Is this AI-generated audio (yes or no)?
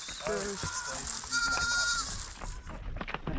no